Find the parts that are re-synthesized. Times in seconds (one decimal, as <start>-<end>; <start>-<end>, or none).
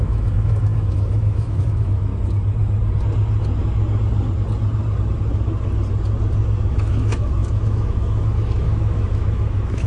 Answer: 0.0-2.1; 6.6-9.9